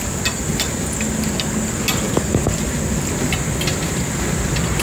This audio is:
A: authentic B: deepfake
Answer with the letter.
A